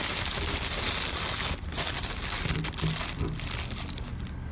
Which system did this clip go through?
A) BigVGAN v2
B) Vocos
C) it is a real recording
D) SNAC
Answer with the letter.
C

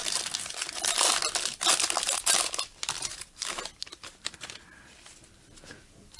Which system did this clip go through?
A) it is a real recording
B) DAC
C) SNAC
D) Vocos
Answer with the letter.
A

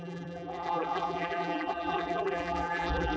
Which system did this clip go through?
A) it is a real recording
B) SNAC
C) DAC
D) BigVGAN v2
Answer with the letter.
D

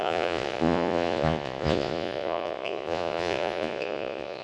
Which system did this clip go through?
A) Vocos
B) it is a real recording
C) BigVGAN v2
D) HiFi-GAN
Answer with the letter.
A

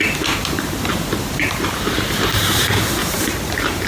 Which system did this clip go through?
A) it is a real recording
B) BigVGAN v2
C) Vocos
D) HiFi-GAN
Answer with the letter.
B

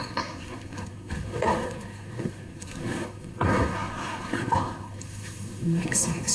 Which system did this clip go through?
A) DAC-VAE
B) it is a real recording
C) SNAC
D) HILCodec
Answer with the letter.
C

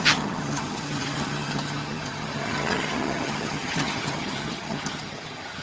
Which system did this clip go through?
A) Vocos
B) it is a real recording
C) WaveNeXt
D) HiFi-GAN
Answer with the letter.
D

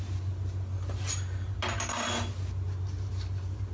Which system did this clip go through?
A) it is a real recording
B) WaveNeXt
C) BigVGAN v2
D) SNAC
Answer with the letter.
A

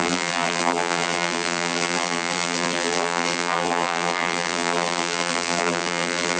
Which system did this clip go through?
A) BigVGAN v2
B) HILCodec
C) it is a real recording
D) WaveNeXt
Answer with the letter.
A